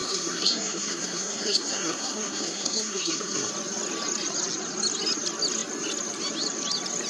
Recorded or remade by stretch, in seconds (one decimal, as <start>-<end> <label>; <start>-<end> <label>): 0.0-3.5 remade; 3.5-7.1 recorded

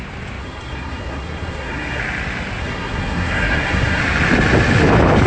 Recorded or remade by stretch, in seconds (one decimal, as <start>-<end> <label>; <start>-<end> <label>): 0.0-0.4 recorded; 0.4-2.0 remade; 2.0-2.6 recorded; 2.6-4.0 remade; 4.0-5.3 recorded